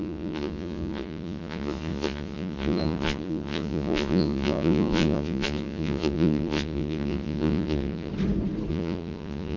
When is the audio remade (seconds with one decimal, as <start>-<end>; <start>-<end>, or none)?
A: 0.0-8.1; 8.7-9.6